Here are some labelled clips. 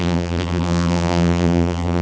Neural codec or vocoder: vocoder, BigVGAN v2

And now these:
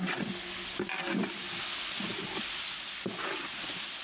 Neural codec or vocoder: none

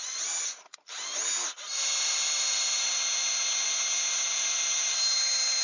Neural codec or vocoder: none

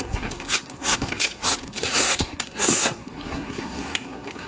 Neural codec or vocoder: codec, SNAC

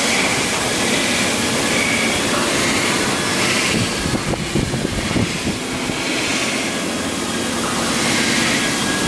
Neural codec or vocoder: none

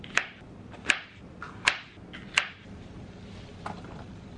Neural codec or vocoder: none